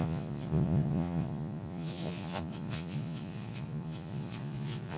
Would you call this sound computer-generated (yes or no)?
yes